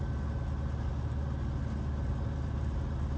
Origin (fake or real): real